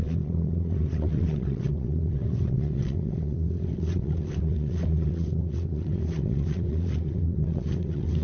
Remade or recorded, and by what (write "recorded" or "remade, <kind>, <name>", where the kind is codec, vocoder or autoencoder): remade, vocoder, WaveNeXt